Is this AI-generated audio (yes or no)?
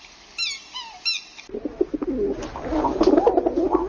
no